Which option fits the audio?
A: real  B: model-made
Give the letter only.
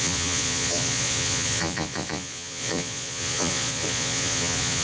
B